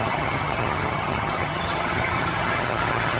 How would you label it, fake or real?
fake